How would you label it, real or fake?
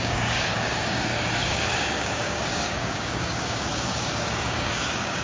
fake